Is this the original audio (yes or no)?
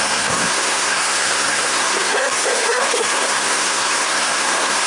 no